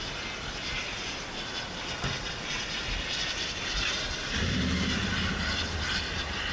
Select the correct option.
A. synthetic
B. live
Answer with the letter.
B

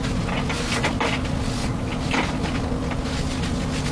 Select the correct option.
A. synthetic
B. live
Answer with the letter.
B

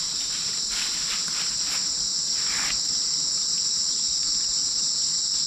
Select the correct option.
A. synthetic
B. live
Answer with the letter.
B